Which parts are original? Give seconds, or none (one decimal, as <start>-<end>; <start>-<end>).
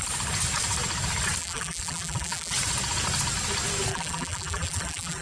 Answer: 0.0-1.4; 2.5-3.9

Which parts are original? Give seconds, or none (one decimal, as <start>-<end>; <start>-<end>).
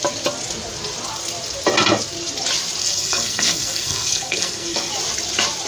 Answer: 0.0-2.8; 4.9-5.7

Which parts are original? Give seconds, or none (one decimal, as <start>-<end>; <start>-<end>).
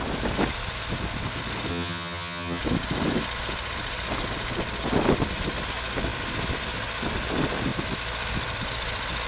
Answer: 0.0-1.7; 2.6-9.3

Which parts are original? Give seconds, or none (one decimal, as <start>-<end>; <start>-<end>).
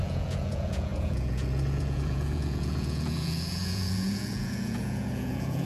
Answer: none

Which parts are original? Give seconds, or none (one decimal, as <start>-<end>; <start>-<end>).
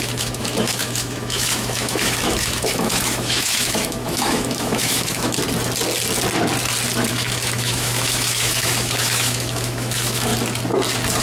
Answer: 5.4-7.1; 10.3-11.2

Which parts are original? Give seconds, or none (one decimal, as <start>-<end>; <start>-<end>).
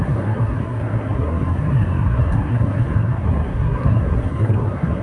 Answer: none